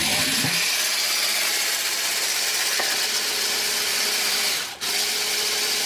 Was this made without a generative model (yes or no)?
yes